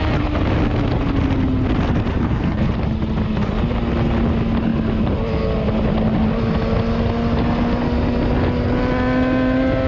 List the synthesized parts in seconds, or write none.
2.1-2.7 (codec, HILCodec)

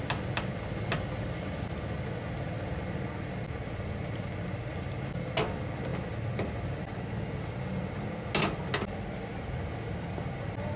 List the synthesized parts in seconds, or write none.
none